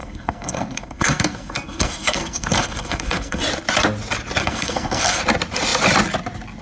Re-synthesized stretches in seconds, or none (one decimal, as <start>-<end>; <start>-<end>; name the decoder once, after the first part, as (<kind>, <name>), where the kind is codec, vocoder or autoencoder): 0.0-3.4 (codec, SNAC); 4.4-5.2